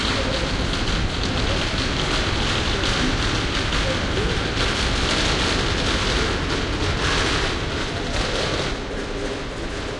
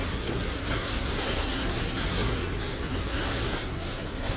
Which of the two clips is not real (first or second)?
second